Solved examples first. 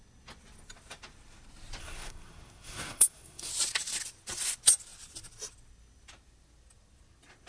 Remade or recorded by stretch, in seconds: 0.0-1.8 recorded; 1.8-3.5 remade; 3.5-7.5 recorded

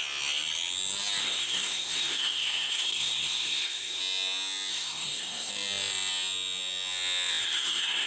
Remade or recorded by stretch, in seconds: 0.0-1.2 recorded; 1.2-4.0 remade; 4.0-4.7 recorded; 4.7-5.5 remade; 5.5-7.4 recorded; 7.4-8.1 remade

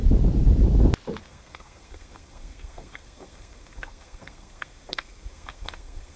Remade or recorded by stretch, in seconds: 0.0-1.2 recorded; 1.2-6.2 remade

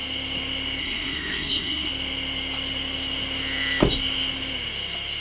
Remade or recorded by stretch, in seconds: 0.0-0.8 recorded; 0.8-1.9 remade; 1.9-5.2 recorded

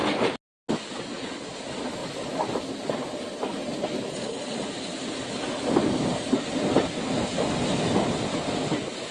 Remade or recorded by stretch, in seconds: 0.0-9.1 recorded

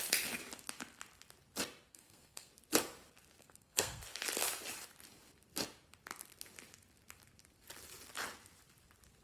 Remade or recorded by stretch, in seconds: 0.0-1.9 recorded; 1.9-2.5 remade; 2.5-3.4 recorded; 3.4-4.0 remade; 4.0-9.2 recorded

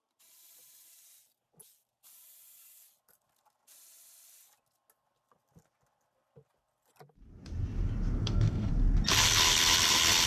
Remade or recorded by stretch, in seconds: 0.0-8.2 recorded; 8.2-8.7 remade; 8.7-10.3 recorded